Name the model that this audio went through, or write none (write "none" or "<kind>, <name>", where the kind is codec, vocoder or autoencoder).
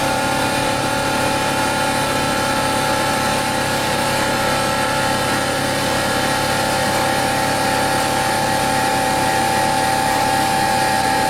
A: vocoder, BigVGAN v2